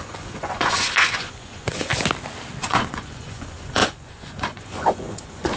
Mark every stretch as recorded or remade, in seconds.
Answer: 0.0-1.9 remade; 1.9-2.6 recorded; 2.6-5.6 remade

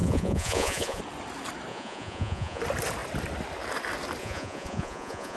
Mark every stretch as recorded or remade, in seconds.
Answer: 0.0-1.0 remade; 1.0-1.7 recorded; 1.7-2.6 remade; 2.6-4.2 recorded; 4.2-5.4 remade

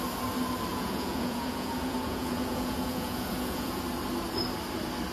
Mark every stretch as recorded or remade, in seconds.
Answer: 0.0-0.7 recorded; 0.7-3.8 remade; 3.8-5.1 recorded

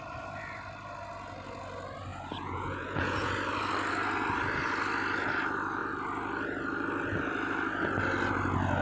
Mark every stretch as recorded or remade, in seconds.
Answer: 0.0-2.1 recorded; 2.1-3.3 remade; 3.3-8.8 recorded

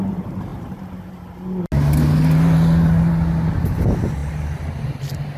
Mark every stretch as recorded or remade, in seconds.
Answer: 0.0-5.4 recorded

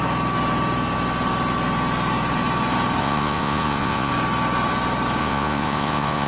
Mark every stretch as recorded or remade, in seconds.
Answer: 0.0-3.0 recorded; 3.0-4.1 remade; 4.1-5.2 recorded; 5.2-6.3 remade

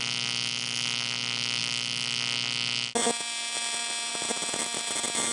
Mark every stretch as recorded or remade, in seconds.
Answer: 0.0-5.3 recorded